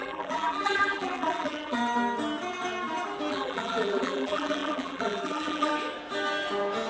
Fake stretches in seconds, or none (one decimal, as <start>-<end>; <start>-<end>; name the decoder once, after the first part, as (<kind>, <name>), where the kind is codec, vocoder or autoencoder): 0.0-1.8 (vocoder, BigVGAN v2); 3.3-5.7